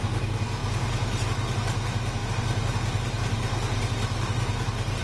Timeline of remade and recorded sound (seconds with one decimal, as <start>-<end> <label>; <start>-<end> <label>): 0.0-5.0 recorded